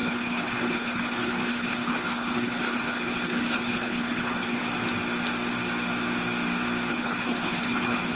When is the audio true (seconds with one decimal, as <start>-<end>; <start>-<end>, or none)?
4.6-6.9